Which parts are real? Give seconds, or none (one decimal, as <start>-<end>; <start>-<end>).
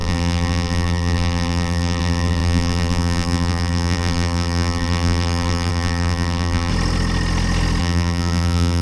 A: 6.7-7.8